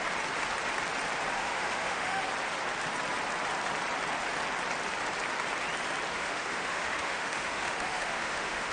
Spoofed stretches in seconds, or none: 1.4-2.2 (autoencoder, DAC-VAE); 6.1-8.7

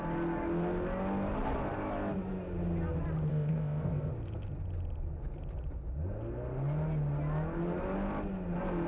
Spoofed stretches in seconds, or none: 3.3-4.1 (codec, ZipCodec)

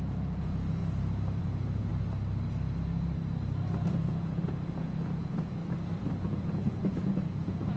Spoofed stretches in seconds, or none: 0.0-0.8 (vocoder, Vocos); 1.4-1.9; 3.9-5.6; 6.2-7.8

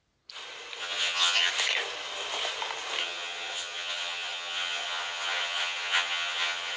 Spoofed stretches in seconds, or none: 0.8-1.5 (vocoder, HiFi-GAN); 3.0-6.8

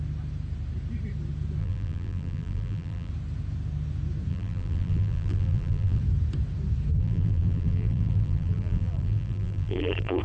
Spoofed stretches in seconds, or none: 1.6-3.1 (vocoder, BigVGAN v2); 4.3-6.0; 7.0-10.2

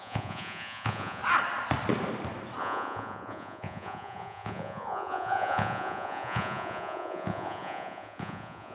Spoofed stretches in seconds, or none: 0.0-1.2 (vocoder, Vocos); 2.6-8.7

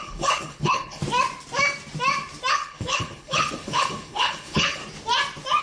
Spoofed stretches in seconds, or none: 0.0-1.0 (codec, HILCodec); 2.5-4.8

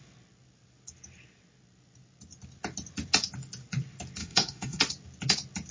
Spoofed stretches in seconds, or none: 4.2-4.8 (autoencoder, DAC-VAE)